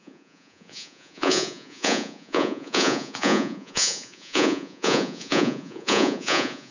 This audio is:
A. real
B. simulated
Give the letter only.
B